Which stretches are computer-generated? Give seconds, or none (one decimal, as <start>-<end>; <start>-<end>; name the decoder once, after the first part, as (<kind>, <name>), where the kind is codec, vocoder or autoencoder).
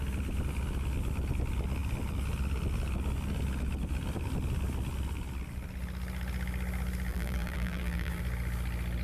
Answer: 7.1-8.2 (vocoder, BigVGAN v2)